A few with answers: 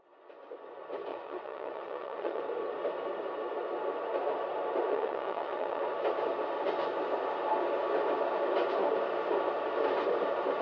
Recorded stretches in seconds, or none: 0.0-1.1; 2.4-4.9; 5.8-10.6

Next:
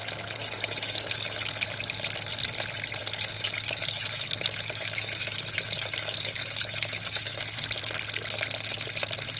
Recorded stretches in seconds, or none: 0.0-0.4; 1.5-3.0; 7.4-9.4

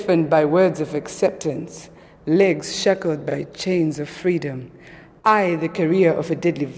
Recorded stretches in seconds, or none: 0.0-6.8

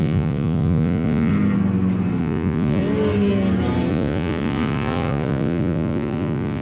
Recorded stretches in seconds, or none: 1.3-2.2; 2.8-3.9

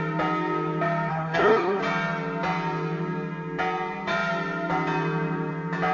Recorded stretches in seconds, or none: 0.0-1.1; 1.8-5.9

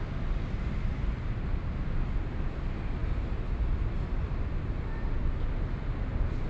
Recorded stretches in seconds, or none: 0.0-6.5

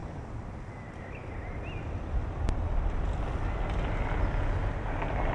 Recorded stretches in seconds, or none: 0.0-5.3